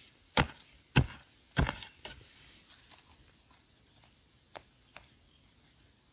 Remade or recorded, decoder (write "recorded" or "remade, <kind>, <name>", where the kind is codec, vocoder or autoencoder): recorded